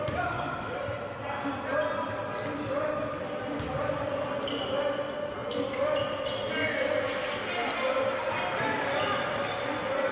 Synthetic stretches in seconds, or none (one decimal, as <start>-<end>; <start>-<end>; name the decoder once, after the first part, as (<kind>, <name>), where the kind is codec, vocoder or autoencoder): none

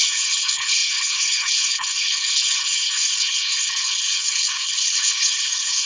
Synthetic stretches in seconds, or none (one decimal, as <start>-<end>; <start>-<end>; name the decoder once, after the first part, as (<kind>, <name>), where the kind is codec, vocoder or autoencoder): 0.0-5.9 (codec, HILCodec)

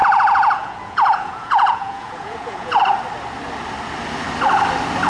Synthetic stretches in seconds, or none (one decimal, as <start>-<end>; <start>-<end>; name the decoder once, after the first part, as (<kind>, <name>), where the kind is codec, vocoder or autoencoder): 0.0-2.8 (vocoder, Vocos)

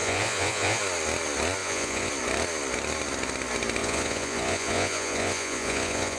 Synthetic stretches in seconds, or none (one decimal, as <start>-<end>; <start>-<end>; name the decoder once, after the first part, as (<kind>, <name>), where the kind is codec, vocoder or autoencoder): 0.0-0.8 (vocoder, Vocos); 1.6-2.1; 3.8-6.2

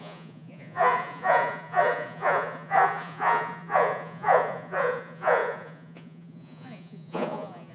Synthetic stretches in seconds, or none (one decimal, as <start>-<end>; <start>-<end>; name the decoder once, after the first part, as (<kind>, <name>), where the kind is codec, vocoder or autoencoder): 0.0-7.7 (vocoder, Vocos)

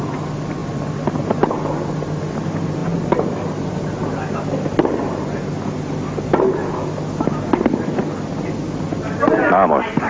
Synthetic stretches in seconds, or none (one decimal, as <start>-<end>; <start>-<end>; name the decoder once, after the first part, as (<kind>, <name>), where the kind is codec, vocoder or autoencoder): none